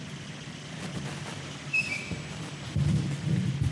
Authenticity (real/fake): real